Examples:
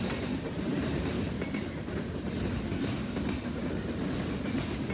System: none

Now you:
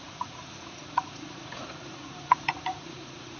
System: vocoder, Vocos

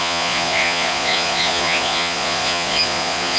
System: vocoder, Vocos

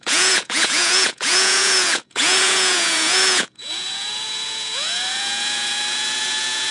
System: vocoder, Vocos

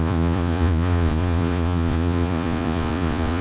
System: vocoder, Vocos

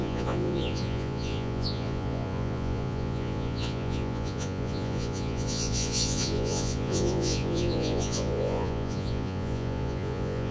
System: vocoder, Vocos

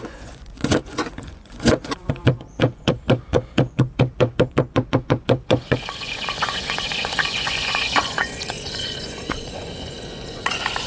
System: vocoder, Vocos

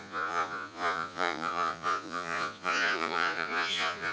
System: vocoder, Vocos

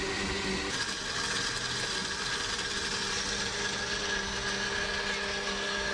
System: none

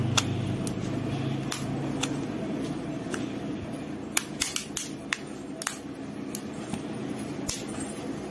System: none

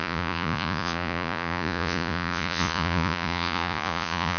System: vocoder, Vocos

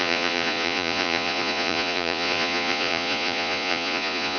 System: vocoder, Vocos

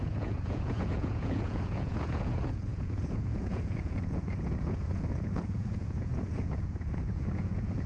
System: vocoder, Vocos